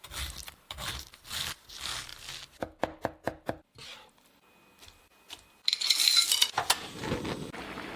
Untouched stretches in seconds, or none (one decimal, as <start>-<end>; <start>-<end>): 2.1-5.0; 6.1-6.7